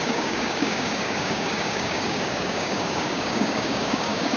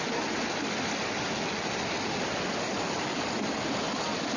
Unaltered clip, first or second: second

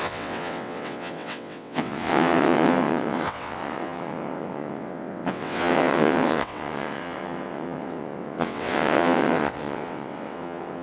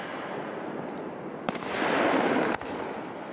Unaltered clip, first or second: second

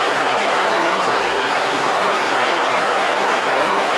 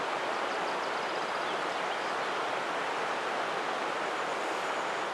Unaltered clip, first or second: second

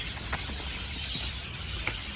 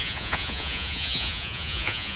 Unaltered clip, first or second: first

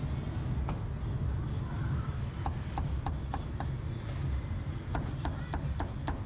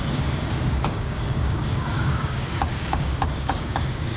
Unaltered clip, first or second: first